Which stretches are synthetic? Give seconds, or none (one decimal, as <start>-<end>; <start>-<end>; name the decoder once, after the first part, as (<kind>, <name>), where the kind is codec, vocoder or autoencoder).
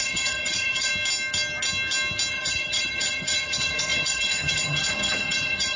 0.0-0.9 (vocoder, HiFi-GAN); 2.3-5.8